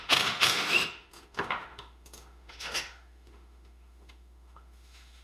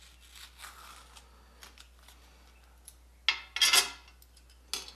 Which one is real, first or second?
second